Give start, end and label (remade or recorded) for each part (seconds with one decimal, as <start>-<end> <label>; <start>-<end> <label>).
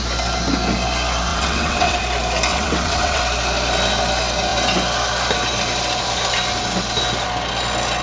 0.0-1.3 recorded; 1.3-2.0 remade; 2.0-2.5 recorded; 2.5-3.2 remade; 3.2-8.0 recorded